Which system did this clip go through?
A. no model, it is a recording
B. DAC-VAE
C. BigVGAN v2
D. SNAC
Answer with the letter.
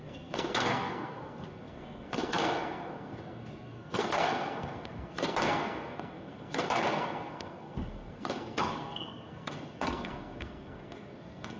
D